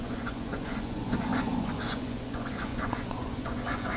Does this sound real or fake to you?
fake